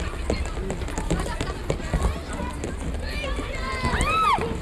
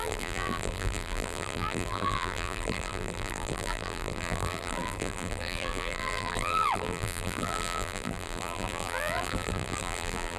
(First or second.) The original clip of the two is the first